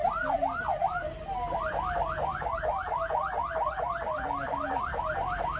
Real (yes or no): yes